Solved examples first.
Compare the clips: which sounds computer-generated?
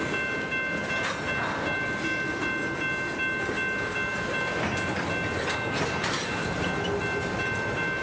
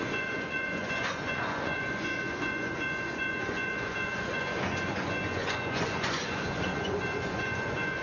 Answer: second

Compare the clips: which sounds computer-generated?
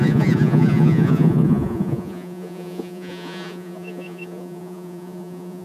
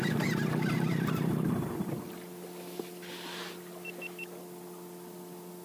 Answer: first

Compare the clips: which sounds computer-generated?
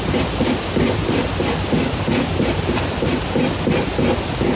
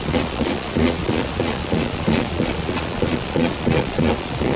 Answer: second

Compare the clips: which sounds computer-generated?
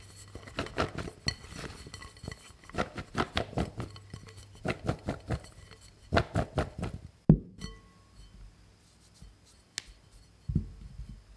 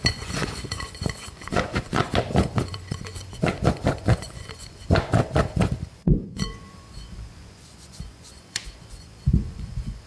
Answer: second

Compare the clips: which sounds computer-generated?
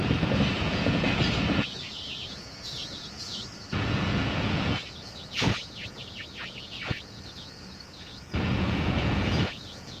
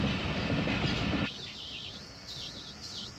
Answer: first